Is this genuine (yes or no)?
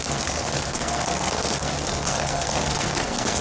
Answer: no